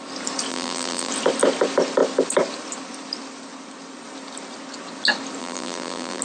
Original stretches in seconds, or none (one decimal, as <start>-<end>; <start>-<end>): 0.0-0.5; 1.1-5.4